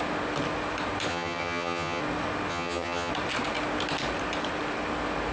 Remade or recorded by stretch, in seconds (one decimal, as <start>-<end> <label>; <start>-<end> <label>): 0.0-1.1 recorded; 1.1-2.0 remade; 2.0-2.5 recorded; 2.5-3.1 remade; 3.1-5.3 recorded